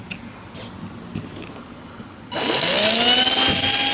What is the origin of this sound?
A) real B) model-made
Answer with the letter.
A